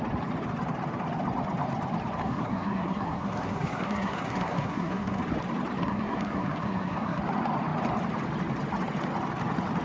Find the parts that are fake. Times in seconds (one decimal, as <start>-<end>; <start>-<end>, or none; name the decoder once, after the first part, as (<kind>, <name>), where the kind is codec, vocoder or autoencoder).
2.2-5.2 (codec, SNAC); 5.8-7.2